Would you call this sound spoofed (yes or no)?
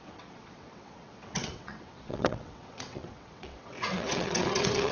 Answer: yes